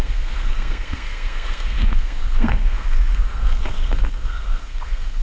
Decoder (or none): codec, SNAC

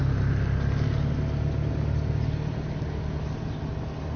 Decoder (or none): none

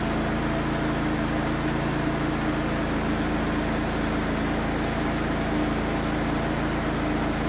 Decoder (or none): none